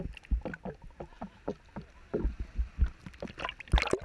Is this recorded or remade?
recorded